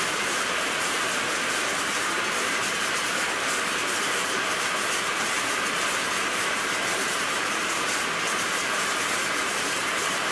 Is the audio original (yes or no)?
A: no